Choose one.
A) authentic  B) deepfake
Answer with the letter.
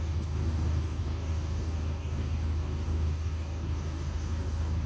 B